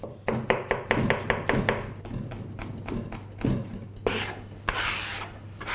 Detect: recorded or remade recorded